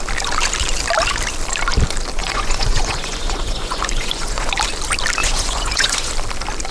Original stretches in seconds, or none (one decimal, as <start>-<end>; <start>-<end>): 0.0-2.2; 4.5-5.2; 6.1-6.7

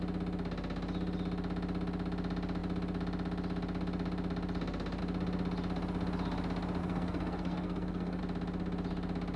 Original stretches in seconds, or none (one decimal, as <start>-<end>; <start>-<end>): 0.0-6.8; 8.2-9.4

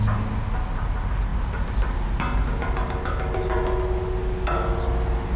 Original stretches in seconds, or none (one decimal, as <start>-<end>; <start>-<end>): 0.0-5.4